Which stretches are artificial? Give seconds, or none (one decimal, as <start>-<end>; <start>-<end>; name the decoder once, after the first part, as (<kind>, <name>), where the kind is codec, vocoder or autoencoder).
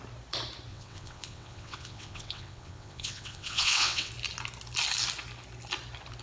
0.7-4.1 (vocoder, WaveNeXt)